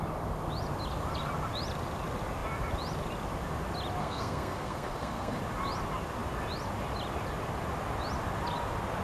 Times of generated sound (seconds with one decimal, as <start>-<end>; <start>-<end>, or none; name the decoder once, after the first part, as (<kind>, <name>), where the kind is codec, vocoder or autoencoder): 4.0-5.4 (codec, SNAC)